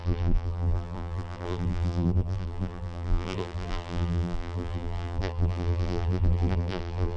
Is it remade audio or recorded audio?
remade